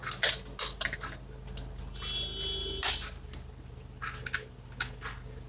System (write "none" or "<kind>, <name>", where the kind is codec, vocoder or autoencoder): none